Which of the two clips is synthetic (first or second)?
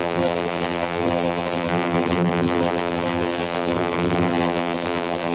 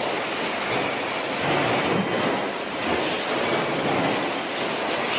first